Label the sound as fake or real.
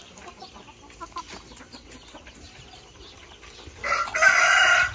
real